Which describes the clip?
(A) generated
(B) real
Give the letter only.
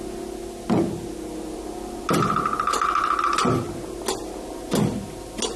B